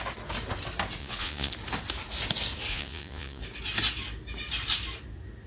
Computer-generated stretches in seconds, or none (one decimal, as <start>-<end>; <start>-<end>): 1.0-1.5; 2.7-3.4